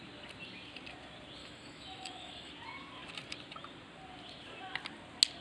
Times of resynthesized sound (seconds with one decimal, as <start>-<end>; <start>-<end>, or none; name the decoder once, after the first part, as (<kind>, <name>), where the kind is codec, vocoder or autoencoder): 1.4-2.5 (autoencoder, DAC-VAE)